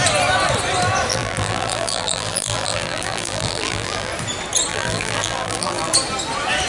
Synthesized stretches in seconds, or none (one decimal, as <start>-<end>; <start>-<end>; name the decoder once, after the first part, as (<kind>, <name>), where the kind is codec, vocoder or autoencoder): 1.1-4.1 (vocoder, BigVGAN v2); 4.7-5.9